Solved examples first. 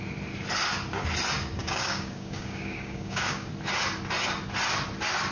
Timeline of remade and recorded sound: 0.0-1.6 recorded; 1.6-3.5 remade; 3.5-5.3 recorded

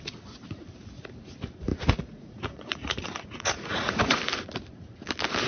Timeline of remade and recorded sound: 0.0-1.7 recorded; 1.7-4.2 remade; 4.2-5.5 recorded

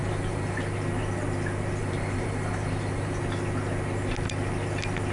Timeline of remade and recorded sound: 0.0-0.6 remade; 0.6-1.8 recorded; 1.8-3.2 remade; 3.2-5.1 recorded

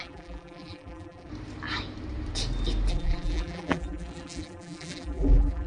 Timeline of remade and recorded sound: 0.0-1.3 remade; 1.3-2.9 recorded; 2.9-5.7 remade

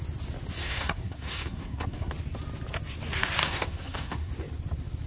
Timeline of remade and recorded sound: 0.0-0.6 recorded; 0.6-2.1 remade; 2.1-3.4 recorded; 3.4-4.3 remade; 4.3-5.1 recorded

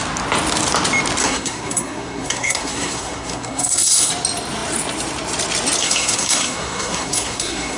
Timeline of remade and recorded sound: 0.0-1.2 recorded; 1.2-4.1 remade; 4.1-5.8 recorded; 5.8-7.8 remade

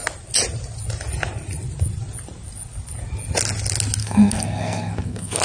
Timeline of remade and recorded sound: 0.0-4.0 recorded; 4.0-5.4 remade

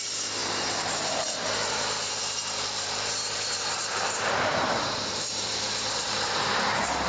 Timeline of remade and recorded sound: 0.0-7.1 remade